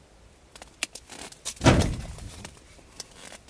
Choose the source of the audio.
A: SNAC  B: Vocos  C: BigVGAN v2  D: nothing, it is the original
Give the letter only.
C